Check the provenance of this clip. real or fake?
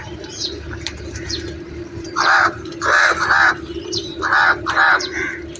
fake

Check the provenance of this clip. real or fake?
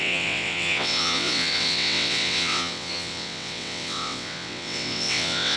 fake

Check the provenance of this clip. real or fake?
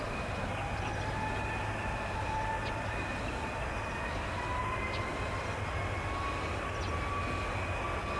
real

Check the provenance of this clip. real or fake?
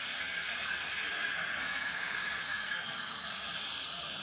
fake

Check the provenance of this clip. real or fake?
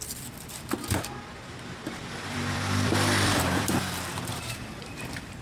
fake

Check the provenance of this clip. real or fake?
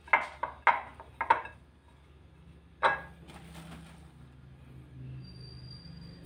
real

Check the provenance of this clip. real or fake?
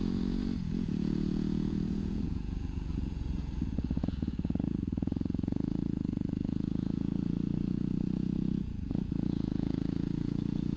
fake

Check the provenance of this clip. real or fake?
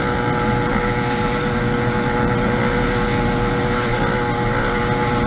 real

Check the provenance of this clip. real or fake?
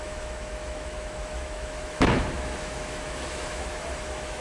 fake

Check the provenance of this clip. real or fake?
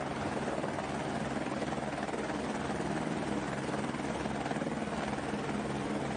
real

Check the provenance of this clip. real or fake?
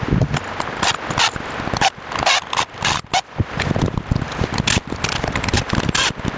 real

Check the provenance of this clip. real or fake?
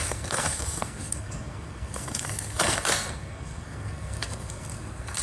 fake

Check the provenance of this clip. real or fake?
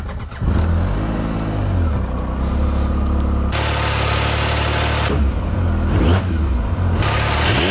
real